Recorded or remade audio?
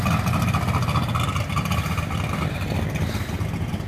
remade